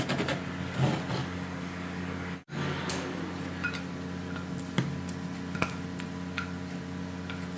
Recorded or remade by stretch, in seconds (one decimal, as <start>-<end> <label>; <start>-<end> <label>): 0.0-1.2 recorded; 1.2-3.2 remade; 3.2-7.6 recorded